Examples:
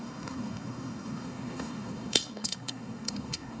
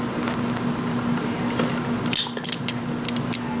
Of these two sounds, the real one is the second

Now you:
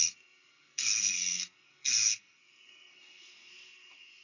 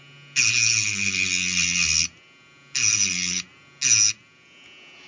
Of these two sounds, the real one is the second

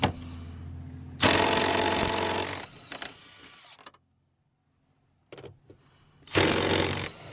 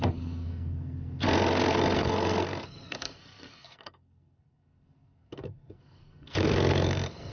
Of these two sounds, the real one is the first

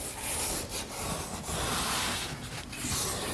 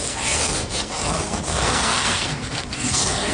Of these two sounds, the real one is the first